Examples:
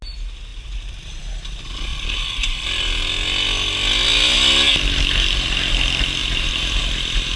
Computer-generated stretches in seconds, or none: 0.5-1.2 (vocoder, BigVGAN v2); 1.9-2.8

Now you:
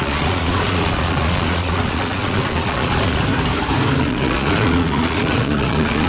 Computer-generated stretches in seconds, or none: 0.0-3.2 (vocoder, Vocos); 4.0-6.1

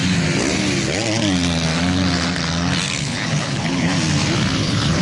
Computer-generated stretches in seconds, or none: 3.0-3.9 (codec, HILCodec); 4.6-5.0

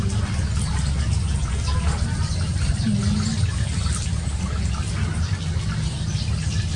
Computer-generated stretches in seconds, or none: none

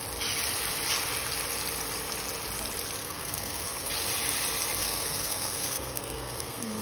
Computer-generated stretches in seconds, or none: 3.0-3.9 (codec, SNAC); 4.8-6.8

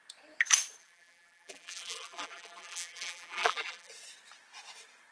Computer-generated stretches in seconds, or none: 0.8-3.9 (vocoder, BigVGAN v2)

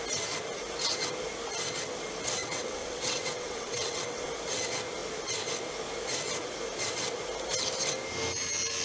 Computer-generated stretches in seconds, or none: 2.4-4.3 (vocoder, WaveNeXt)

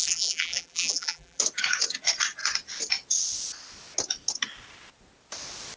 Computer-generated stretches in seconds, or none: 0.0-1.4 (vocoder, BigVGAN v2)